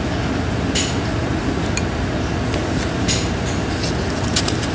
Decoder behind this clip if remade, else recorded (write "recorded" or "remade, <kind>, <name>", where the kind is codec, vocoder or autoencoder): recorded